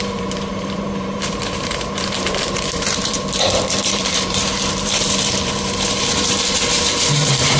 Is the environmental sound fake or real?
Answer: fake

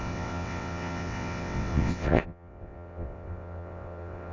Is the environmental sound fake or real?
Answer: fake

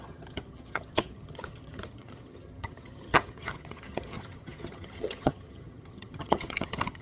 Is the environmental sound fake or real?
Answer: fake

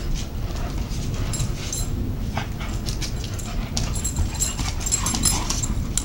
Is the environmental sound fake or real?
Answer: real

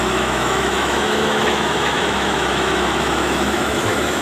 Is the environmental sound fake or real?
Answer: fake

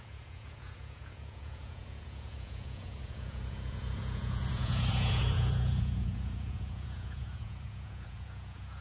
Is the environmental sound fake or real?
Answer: fake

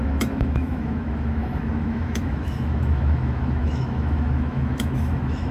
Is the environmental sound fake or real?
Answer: fake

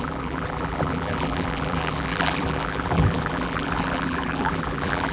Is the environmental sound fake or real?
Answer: fake